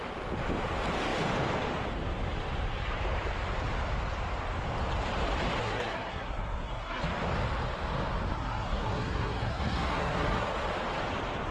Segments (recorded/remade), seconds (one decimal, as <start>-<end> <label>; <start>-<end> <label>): 0.0-5.6 recorded; 5.6-7.0 remade; 7.0-8.3 recorded; 8.3-10.5 remade; 10.5-11.5 recorded

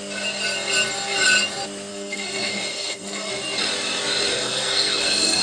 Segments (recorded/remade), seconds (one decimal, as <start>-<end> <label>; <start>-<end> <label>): 0.0-1.9 recorded; 1.9-3.3 remade; 3.3-4.3 recorded; 4.3-5.4 remade

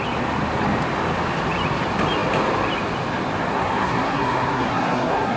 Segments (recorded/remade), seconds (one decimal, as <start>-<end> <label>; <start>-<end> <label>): 0.0-3.5 recorded; 3.5-5.4 remade

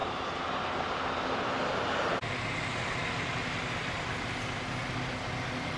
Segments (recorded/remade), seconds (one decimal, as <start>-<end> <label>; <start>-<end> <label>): 0.0-5.8 recorded

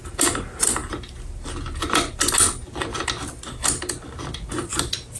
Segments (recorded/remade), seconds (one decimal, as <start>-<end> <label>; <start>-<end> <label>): 0.0-5.2 recorded

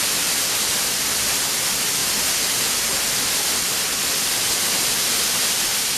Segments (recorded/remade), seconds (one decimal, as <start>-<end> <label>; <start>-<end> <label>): 0.0-6.0 recorded